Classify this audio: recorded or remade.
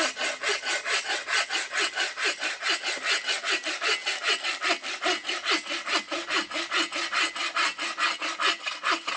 recorded